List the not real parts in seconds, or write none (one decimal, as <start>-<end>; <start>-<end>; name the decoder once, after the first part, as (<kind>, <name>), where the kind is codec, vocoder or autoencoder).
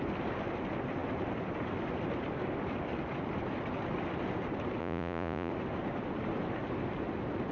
4.8-5.5 (vocoder, Vocos)